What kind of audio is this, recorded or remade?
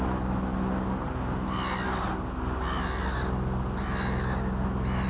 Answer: recorded